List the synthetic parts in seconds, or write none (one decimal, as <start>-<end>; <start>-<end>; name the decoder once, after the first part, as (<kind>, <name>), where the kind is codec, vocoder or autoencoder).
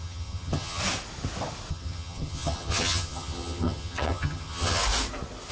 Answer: 0.0-0.8 (vocoder, HiFi-GAN); 1.7-4.8